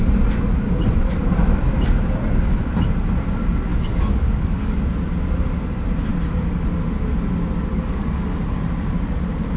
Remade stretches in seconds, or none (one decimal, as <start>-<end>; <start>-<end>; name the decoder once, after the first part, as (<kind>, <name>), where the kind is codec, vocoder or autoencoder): 3.7-4.8 (codec, DAC); 7.7-8.4